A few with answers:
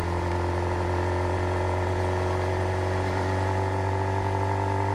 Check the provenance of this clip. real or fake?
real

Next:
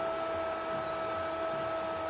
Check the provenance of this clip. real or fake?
real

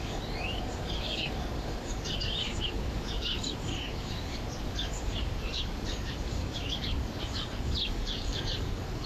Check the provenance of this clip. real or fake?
fake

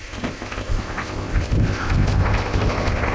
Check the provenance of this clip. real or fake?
fake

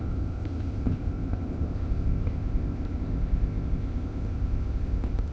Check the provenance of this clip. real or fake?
fake